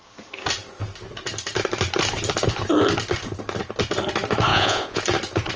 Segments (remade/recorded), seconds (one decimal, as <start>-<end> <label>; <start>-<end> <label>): 0.0-4.5 recorded; 4.5-5.0 remade; 5.0-5.6 recorded